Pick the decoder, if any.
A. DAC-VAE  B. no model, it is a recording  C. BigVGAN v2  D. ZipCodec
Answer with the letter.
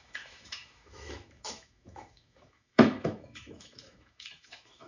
A